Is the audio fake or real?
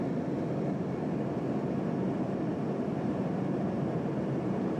real